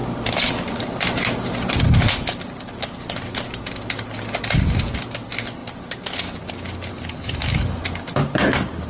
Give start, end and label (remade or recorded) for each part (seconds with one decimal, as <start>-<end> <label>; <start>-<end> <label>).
0.0-6.9 recorded; 6.9-7.8 remade; 7.8-8.9 recorded